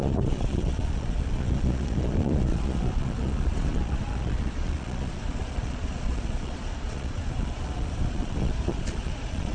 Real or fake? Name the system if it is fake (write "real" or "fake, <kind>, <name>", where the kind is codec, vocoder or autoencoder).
fake, vocoder, Vocos